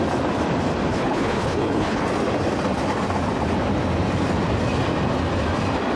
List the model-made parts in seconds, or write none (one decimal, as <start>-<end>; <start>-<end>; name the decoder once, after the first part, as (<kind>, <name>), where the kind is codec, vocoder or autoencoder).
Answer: 0.9-2.0 (codec, HILCodec)